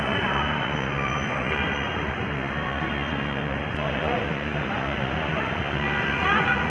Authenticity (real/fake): fake